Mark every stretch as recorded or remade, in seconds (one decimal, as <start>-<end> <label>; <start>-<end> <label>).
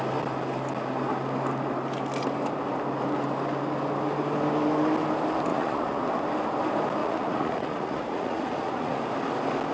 0.0-5.5 recorded; 5.5-6.0 remade; 6.0-7.0 recorded; 7.0-9.0 remade; 9.0-9.7 recorded